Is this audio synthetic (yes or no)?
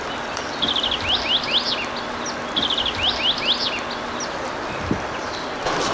no